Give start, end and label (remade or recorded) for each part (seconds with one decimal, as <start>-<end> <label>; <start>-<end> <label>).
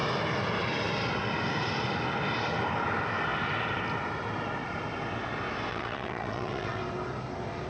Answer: 0.0-5.7 recorded; 5.7-6.8 remade; 6.8-7.7 recorded